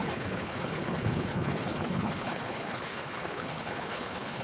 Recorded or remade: remade